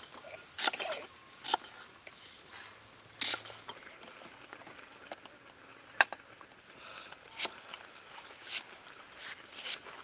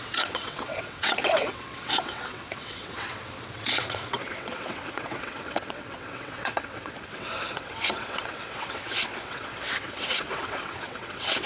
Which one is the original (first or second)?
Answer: first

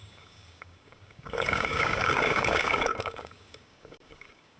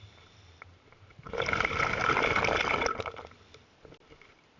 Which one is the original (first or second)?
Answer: second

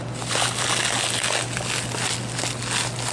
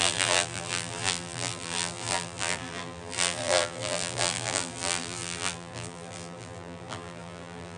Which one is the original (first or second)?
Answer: first